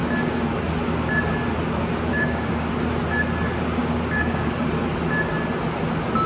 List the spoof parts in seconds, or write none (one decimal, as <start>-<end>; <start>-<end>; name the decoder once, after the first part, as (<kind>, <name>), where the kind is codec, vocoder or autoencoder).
2.1-2.7 (codec, DAC); 3.8-4.6